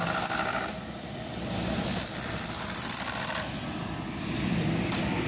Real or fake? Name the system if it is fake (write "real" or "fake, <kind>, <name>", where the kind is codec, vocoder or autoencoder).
fake, vocoder, BigVGAN v2